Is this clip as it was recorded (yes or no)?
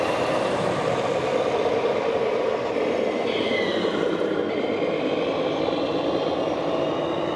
yes